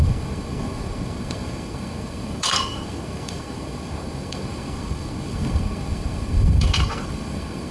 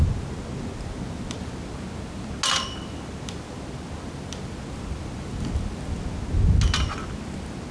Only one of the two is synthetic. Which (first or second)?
first